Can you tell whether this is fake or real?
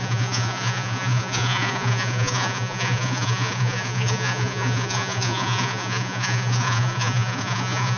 fake